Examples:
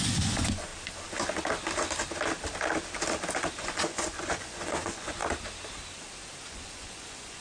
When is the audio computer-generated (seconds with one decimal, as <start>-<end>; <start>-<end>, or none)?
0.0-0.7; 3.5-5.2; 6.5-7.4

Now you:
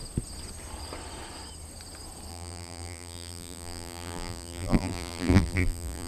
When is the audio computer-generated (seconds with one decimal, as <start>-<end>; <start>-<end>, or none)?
2.3-6.1

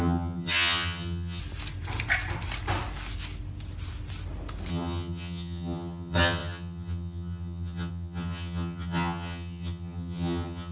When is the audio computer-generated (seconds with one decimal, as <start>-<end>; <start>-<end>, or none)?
0.0-1.4; 4.7-10.7

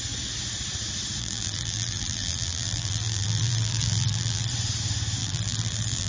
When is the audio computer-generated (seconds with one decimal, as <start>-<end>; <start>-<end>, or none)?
1.2-4.5; 5.2-6.1

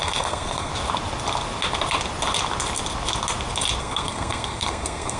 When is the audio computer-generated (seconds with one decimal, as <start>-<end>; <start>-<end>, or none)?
0.0-0.7; 3.8-5.2

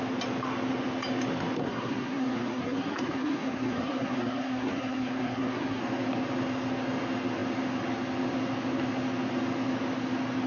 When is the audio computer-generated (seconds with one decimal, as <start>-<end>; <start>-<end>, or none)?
1.6-5.8

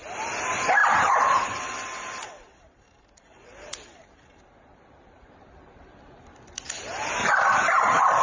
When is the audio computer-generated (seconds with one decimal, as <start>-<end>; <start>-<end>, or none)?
0.8-5.7; 7.2-8.2